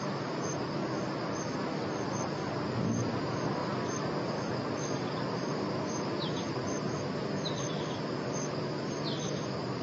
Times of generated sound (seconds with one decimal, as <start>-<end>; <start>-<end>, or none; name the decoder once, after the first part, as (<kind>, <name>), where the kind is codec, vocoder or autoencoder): 0.0-0.8 (vocoder, BigVGAN v2); 2.5-3.6; 7.3-9.8